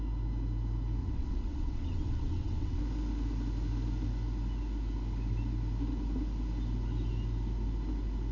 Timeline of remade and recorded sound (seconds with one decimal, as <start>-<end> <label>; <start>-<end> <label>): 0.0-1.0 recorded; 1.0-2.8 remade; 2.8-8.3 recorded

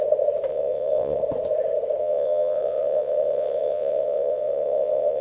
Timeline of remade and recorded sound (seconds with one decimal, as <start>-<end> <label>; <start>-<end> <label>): 0.0-0.5 recorded; 0.5-1.2 remade; 1.2-2.0 recorded; 2.0-5.2 remade

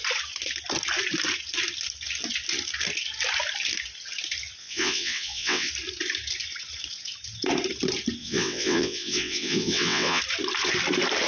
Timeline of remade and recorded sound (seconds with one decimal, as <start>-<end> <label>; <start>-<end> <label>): 0.0-4.6 recorded; 4.6-5.7 remade; 5.7-8.2 recorded; 8.2-10.2 remade; 10.2-11.3 recorded

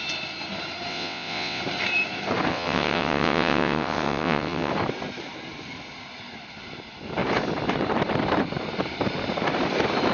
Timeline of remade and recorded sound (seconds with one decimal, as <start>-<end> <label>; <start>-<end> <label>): 0.0-0.9 recorded; 0.9-1.6 remade; 1.6-2.5 recorded; 2.5-4.7 remade; 4.7-10.1 recorded

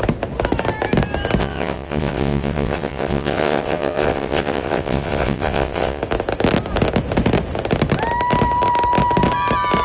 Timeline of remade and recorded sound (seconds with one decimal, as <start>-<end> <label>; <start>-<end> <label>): 0.0-1.4 recorded; 1.4-6.0 remade; 6.0-9.8 recorded

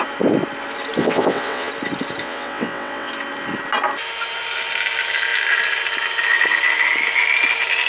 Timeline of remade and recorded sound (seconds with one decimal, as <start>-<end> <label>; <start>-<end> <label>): 0.0-1.0 recorded; 1.0-1.7 remade; 1.7-2.2 recorded; 2.2-3.1 remade; 3.1-7.9 recorded